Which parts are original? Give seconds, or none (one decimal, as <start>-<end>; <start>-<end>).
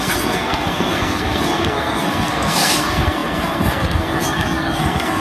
none